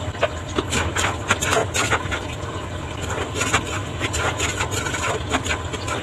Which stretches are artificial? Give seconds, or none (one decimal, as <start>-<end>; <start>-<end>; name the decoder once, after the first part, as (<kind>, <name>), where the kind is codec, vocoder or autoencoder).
1.6-2.8 (vocoder, Vocos); 3.8-4.8